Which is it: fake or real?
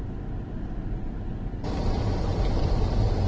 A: real